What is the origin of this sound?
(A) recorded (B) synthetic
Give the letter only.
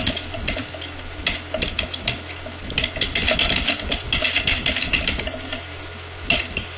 A